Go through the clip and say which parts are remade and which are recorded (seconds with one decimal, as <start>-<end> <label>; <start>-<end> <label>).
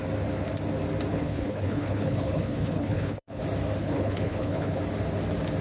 0.0-1.1 recorded; 1.1-3.4 remade; 3.4-3.8 recorded; 3.8-4.8 remade; 4.8-5.6 recorded